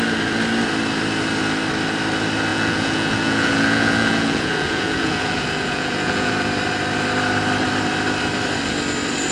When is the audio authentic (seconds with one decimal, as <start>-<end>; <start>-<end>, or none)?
0.0-2.5; 6.3-9.3